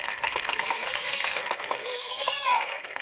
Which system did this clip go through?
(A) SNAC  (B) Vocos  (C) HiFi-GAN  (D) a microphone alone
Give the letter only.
A